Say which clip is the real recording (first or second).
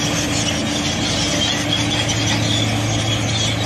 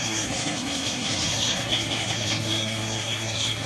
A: first